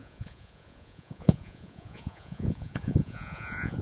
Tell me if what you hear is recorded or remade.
remade